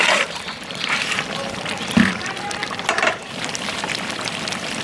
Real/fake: fake